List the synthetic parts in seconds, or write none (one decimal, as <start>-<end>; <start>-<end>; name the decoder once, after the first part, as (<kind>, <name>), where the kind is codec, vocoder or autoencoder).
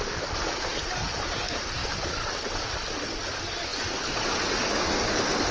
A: 1.8-2.6 (vocoder, BigVGAN v2)